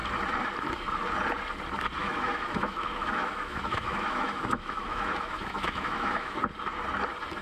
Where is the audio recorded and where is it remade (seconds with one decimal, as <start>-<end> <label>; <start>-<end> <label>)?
0.0-2.0 recorded; 2.0-6.4 remade; 6.4-7.4 recorded

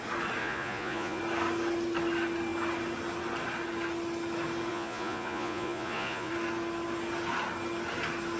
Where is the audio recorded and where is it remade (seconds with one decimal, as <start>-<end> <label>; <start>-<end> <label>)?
0.0-0.4 recorded; 0.4-1.2 remade; 1.2-4.7 recorded; 4.7-6.3 remade; 6.3-8.4 recorded

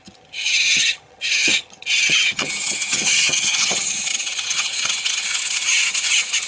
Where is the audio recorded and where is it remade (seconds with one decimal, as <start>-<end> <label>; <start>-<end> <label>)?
0.0-6.5 remade

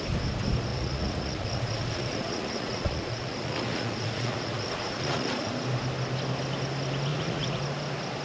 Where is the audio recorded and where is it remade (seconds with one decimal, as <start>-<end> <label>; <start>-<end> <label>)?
0.0-0.7 recorded; 0.7-5.5 remade; 5.5-7.1 recorded; 7.1-7.6 remade; 7.6-8.2 recorded

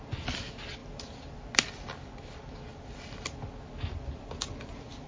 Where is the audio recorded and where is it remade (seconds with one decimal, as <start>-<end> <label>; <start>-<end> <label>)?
0.0-5.1 recorded

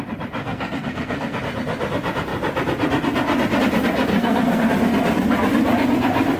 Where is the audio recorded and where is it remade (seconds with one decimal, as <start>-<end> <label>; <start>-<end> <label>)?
0.0-0.4 recorded; 0.4-1.4 remade; 1.4-4.1 recorded; 4.1-4.7 remade; 4.7-6.4 recorded

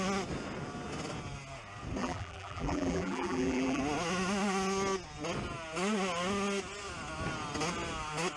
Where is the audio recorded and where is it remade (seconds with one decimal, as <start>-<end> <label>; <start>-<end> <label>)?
0.0-2.0 recorded; 2.0-3.8 remade; 3.8-8.4 recorded

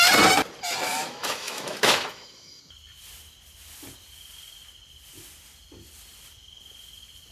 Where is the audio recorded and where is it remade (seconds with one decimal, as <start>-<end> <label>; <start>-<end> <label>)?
0.0-0.9 recorded; 0.9-2.6 remade; 2.6-7.3 recorded